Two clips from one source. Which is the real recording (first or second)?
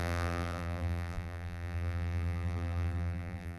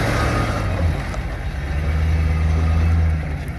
second